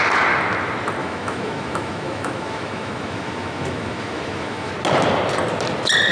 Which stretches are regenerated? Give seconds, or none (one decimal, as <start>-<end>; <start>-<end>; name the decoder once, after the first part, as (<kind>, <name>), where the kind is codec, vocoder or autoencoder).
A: 1.0-4.7 (autoencoder, DAC-VAE)